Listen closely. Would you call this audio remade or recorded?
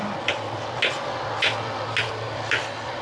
recorded